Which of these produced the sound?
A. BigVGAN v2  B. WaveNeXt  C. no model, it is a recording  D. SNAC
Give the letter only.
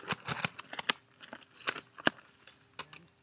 C